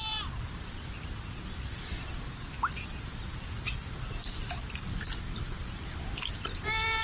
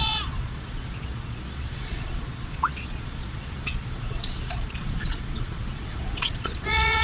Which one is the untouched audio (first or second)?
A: first